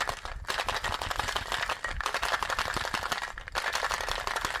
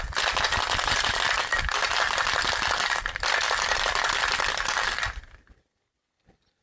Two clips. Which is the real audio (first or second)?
first